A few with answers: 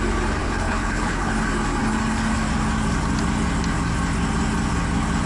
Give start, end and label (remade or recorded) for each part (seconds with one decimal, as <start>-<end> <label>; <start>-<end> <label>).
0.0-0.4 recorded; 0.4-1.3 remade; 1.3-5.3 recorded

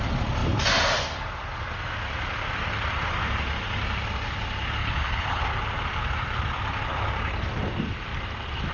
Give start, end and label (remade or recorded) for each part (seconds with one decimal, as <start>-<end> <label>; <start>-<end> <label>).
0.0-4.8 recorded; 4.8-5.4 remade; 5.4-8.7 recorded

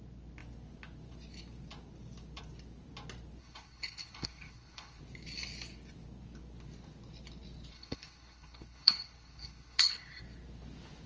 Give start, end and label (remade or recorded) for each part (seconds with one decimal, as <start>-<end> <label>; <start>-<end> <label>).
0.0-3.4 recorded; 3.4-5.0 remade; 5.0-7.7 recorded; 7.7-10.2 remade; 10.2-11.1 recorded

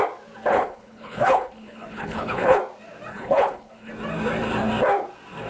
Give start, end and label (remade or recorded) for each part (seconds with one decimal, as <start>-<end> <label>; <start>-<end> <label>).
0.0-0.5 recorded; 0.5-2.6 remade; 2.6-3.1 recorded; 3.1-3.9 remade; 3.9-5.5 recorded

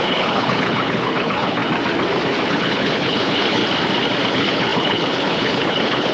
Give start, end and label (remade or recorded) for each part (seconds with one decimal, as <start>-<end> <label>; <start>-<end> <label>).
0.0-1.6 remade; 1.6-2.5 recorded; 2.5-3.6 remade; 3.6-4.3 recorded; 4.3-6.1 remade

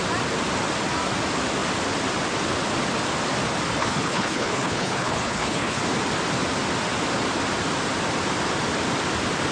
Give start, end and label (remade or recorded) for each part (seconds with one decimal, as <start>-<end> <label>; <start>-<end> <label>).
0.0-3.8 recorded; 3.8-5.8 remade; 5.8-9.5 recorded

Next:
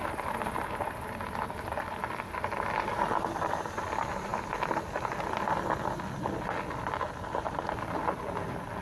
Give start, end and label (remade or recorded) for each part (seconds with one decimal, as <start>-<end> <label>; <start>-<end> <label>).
0.0-8.8 recorded